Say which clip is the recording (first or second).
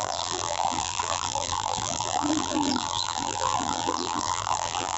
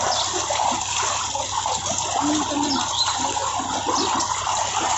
second